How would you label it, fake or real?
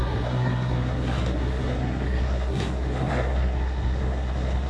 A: fake